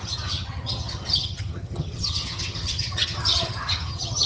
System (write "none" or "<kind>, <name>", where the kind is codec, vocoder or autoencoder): vocoder, HiFi-GAN